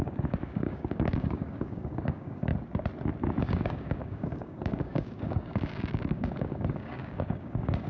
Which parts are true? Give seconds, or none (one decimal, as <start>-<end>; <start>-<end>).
2.5-3.4